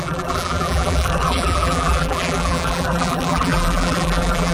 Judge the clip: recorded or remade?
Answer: remade